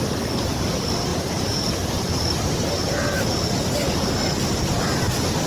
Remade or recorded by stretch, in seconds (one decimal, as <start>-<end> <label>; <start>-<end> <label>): 0.0-1.1 recorded; 1.1-4.4 remade; 4.4-5.5 recorded